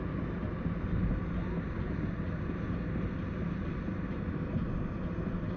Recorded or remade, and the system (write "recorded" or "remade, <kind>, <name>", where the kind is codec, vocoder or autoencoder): recorded